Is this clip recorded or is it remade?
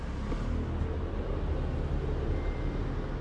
recorded